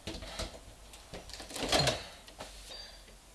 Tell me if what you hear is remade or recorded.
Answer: recorded